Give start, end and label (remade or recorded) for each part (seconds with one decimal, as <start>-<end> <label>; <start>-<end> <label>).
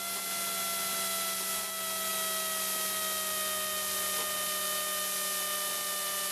0.0-6.3 recorded